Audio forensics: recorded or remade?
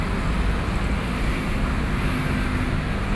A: recorded